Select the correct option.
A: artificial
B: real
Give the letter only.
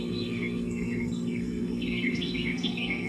A